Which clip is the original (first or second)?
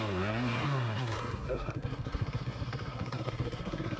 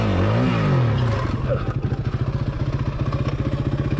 second